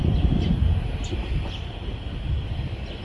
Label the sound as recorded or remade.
recorded